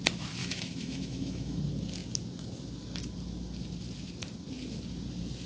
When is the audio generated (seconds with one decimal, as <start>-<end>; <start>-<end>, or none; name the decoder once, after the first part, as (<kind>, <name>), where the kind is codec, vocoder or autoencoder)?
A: 0.4-1.6 (autoencoder, DAC-VAE)